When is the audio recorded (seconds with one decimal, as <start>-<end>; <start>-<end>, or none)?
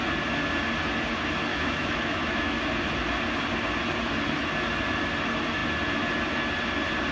0.0-1.5; 2.6-7.1